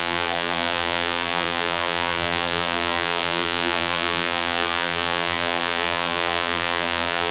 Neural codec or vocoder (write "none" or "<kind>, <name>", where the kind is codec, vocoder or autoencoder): vocoder, BigVGAN v2